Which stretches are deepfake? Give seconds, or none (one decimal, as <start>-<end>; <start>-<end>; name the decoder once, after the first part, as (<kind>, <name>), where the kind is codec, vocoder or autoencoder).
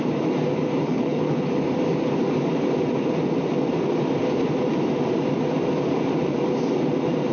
0.9-1.5 (codec, HILCodec)